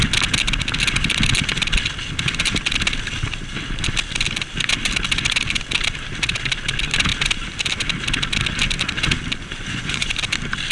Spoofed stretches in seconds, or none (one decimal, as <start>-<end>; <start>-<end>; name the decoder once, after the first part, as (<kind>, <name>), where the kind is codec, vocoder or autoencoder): 9.4-10.1 (vocoder, Vocos)